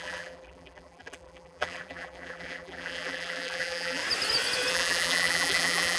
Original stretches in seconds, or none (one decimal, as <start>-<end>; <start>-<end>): 4.0-4.7